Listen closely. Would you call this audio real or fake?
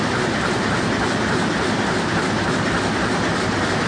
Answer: real